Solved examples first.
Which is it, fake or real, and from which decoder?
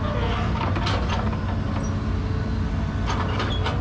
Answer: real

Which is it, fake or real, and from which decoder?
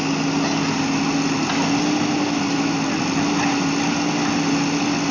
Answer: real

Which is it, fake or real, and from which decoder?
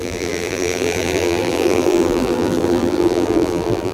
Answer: fake, vocoder, BigVGAN v2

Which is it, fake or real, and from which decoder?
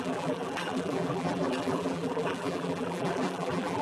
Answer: fake, vocoder, BigVGAN v2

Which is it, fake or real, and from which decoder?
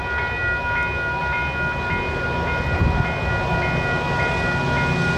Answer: real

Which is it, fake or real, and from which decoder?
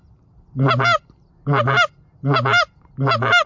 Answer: real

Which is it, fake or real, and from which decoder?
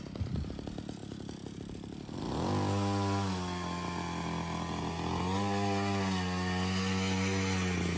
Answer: real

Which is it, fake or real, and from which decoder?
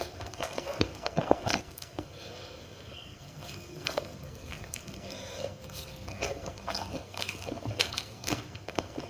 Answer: fake, codec, SNAC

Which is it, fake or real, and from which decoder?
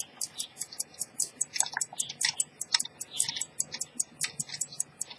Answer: real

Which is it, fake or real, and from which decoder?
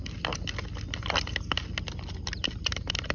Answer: real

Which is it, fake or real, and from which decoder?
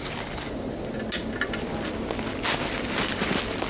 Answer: real